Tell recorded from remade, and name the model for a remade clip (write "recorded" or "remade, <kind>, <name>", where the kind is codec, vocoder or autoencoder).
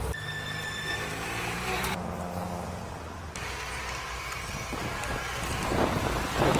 recorded